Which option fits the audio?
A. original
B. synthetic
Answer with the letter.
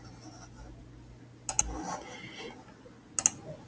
A